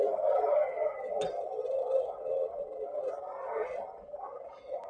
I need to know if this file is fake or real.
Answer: real